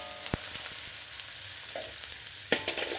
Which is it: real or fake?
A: real